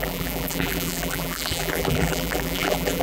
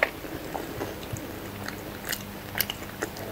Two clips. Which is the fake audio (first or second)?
first